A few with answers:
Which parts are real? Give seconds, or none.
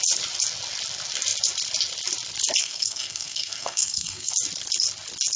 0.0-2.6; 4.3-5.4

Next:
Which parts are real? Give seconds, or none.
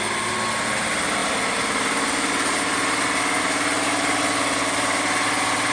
0.0-5.7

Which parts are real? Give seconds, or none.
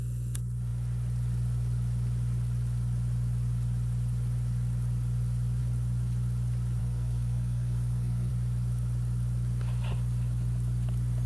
0.0-6.8; 8.3-11.3